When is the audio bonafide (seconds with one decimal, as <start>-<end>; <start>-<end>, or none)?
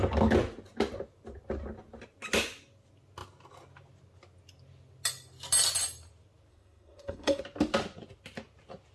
0.0-6.5; 7.4-8.9